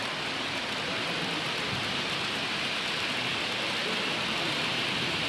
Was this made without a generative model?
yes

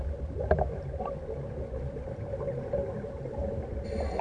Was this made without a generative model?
yes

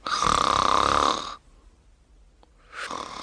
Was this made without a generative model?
yes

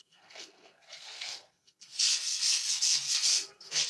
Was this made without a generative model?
no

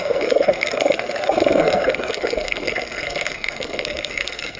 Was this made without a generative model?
no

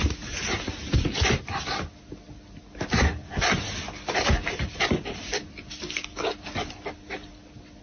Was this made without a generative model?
yes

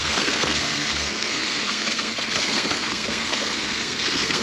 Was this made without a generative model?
no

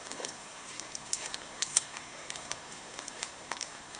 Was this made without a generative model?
no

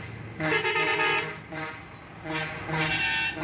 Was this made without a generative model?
yes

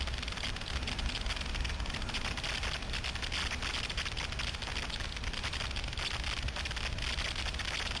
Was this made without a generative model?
yes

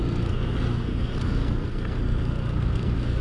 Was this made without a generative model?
no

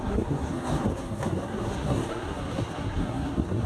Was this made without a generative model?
no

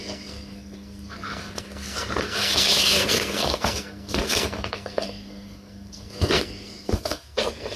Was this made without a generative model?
no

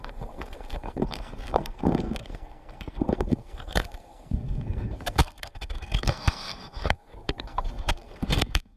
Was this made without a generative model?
no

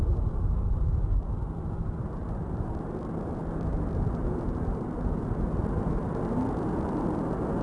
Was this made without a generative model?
yes